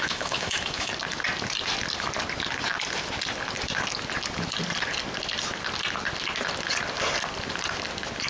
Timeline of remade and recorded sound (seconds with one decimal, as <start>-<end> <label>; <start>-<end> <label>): 0.0-0.9 remade; 0.9-8.3 recorded